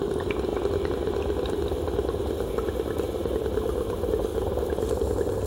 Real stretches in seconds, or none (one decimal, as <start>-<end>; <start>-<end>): 0.0-3.2; 3.8-5.5